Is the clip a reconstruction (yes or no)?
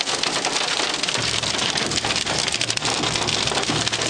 no